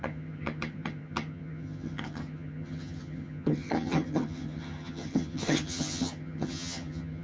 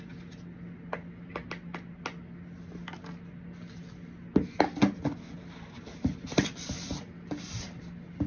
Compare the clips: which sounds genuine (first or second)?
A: second